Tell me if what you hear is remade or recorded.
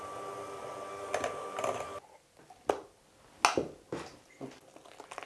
recorded